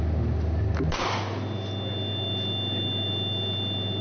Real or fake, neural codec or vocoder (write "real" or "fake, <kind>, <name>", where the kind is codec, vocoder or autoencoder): real